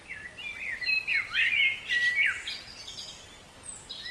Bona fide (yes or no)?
yes